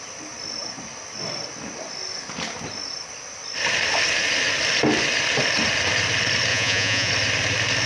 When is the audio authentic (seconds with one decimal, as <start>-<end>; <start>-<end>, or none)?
0.0-6.5; 7.1-7.9